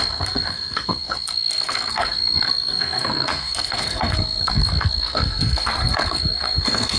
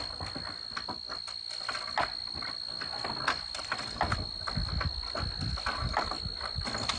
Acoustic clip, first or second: second